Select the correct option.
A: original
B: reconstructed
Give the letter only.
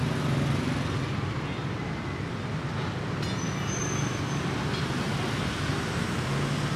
A